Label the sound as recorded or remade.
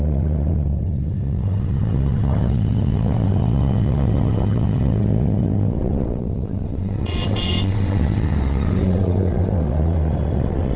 remade